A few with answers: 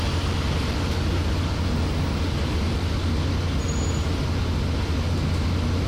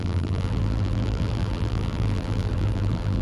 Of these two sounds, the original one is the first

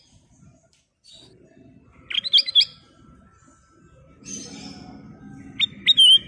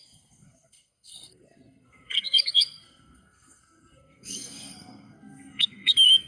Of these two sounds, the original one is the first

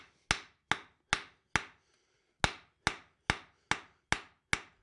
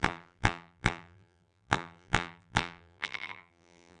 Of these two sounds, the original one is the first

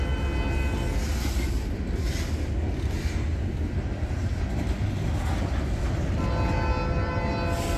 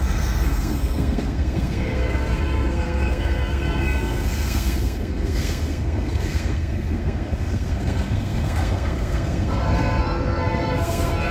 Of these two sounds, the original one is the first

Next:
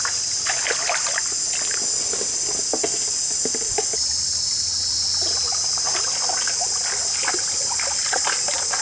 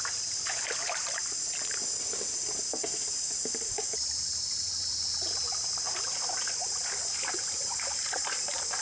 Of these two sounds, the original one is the first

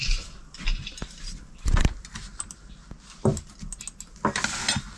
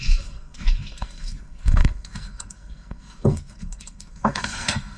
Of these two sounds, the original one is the first